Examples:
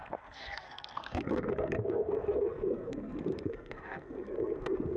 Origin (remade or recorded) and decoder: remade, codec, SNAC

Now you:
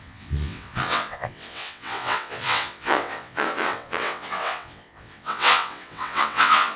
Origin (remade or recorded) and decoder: remade, vocoder, WaveNeXt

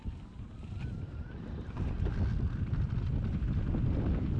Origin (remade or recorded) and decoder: recorded